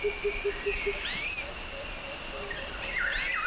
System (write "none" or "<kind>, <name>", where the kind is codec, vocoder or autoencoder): none